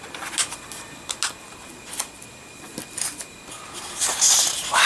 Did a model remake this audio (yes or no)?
no